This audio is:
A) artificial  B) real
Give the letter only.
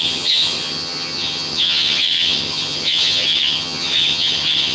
A